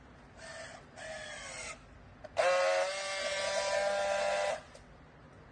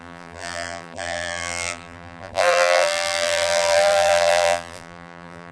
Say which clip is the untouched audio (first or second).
first